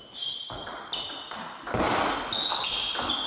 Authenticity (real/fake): real